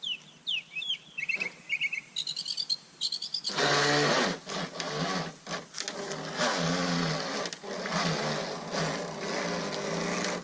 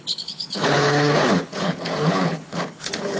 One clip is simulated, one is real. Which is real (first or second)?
first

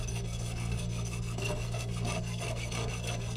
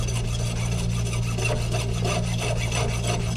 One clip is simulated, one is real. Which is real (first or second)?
second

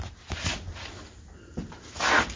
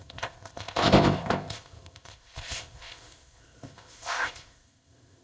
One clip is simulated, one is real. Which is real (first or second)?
first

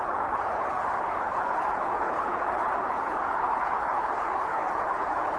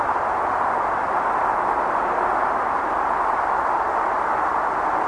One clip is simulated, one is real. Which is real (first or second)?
second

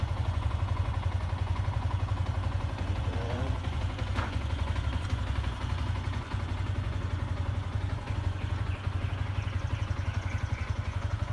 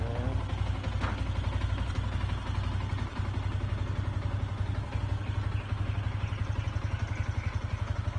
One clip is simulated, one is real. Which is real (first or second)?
second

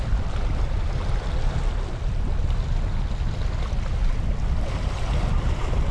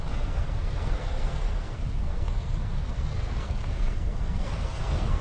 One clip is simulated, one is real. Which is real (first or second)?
first